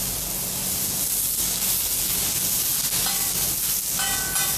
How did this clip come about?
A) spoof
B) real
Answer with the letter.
B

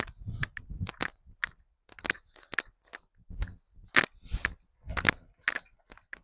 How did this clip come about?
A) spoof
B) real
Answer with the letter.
B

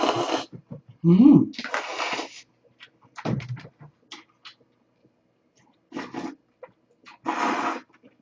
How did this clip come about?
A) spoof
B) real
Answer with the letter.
B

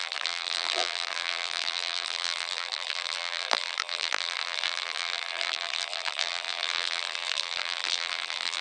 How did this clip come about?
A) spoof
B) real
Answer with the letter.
A